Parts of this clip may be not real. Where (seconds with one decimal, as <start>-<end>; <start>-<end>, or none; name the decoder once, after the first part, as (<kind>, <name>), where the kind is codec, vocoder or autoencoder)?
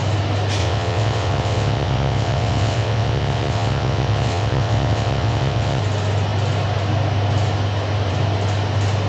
0.6-5.8 (vocoder, WaveNeXt)